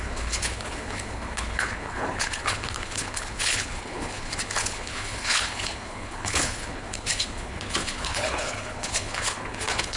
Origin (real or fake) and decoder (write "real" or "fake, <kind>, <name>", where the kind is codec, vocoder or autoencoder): fake, codec, HILCodec